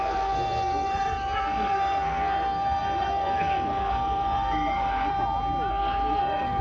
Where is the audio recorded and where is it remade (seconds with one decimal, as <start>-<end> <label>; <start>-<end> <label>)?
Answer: 0.0-5.1 remade; 5.1-5.7 recorded; 5.7-6.6 remade